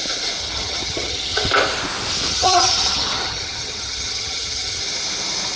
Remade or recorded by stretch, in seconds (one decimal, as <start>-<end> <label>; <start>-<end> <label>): 0.0-0.4 recorded; 0.4-1.5 remade; 1.5-2.3 recorded; 2.3-4.8 remade; 4.8-5.6 recorded